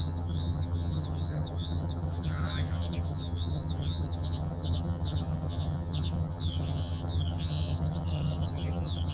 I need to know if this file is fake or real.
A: fake